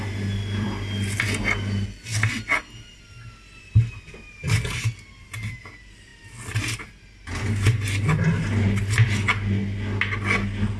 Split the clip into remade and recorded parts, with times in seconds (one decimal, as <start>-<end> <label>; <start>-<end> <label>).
0.0-10.8 recorded